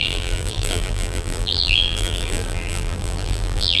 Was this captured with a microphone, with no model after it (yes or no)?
no